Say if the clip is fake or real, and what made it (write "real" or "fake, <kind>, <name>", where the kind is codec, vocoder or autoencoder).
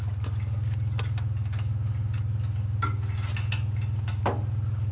real